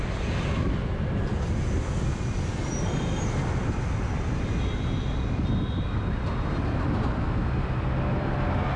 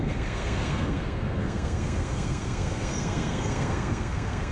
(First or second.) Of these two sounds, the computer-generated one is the second